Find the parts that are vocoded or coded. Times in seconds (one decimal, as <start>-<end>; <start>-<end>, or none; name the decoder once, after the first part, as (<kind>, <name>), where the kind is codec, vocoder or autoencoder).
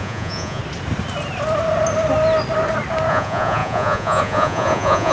0.0-0.6 (vocoder, Vocos); 3.1-5.1